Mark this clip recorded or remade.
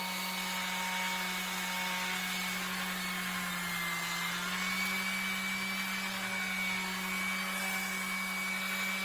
recorded